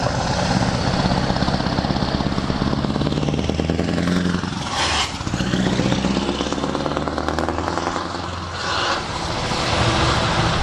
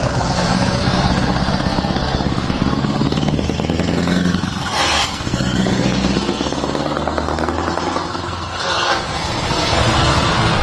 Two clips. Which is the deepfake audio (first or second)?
second